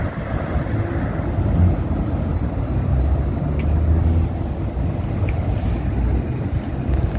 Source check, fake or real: real